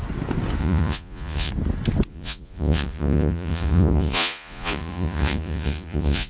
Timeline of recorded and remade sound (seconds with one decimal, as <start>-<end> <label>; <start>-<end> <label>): 0.0-0.6 recorded; 0.6-1.5 remade; 1.5-2.1 recorded; 2.1-6.3 remade